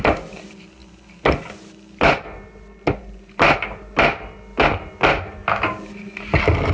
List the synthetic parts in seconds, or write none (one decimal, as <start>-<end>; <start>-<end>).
none